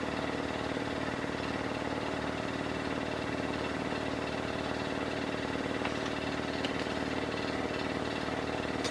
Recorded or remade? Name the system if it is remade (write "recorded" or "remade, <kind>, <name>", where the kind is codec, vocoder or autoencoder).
recorded